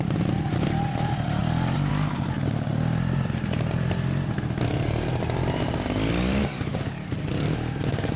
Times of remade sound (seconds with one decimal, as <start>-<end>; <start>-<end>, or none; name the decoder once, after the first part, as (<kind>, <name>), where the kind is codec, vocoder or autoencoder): 1.4-1.9 (vocoder, BigVGAN v2); 2.7-5.7